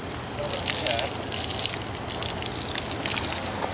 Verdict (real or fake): real